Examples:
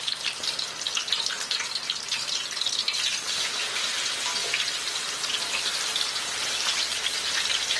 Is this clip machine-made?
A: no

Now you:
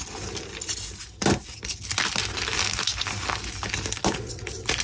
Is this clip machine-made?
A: no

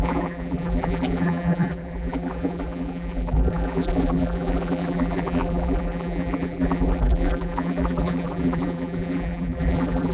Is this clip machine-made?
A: yes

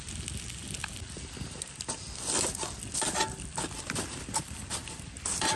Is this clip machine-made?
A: no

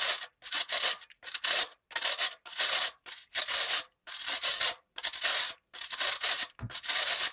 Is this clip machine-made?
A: yes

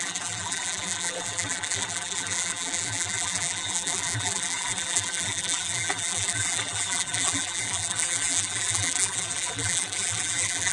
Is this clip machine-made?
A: yes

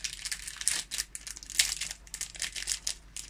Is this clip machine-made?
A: no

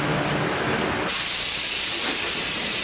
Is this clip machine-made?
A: yes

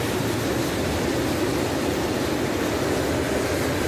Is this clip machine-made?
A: yes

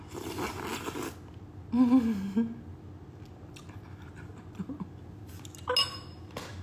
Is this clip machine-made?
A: no